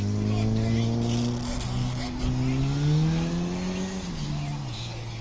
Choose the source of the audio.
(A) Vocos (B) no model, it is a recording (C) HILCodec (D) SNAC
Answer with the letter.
B